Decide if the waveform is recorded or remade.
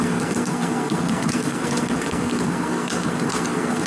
remade